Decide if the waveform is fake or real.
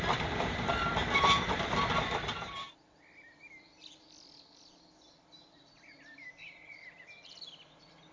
fake